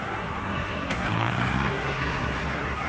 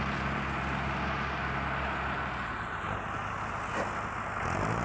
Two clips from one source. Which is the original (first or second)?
second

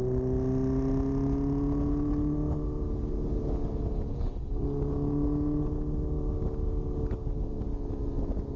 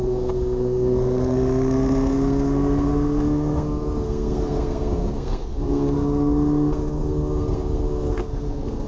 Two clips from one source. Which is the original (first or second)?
first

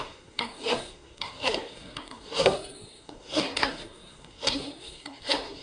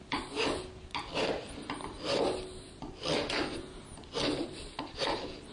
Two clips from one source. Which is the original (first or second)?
second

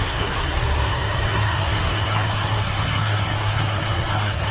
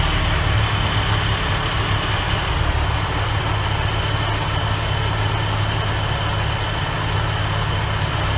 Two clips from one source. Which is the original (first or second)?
second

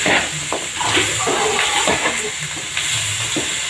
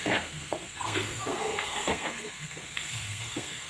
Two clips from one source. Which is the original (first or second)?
first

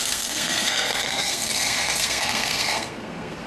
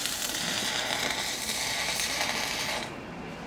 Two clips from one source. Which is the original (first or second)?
second